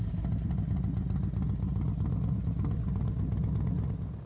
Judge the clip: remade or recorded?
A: recorded